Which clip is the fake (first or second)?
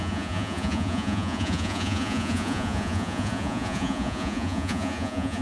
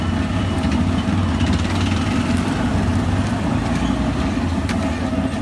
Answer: first